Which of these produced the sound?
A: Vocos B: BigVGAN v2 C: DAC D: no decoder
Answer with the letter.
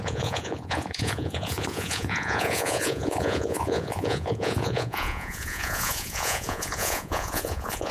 A